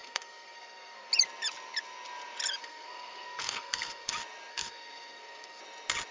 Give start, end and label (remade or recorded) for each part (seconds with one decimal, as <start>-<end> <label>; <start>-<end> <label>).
0.0-1.1 remade; 1.1-2.6 recorded; 2.6-4.1 remade; 4.1-4.5 recorded; 4.5-5.6 remade; 5.6-6.1 recorded